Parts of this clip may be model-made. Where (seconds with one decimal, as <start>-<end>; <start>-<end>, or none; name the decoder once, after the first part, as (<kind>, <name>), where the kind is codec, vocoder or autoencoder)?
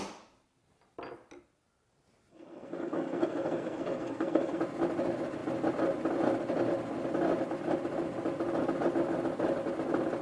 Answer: 2.3-4.6 (codec, SNAC)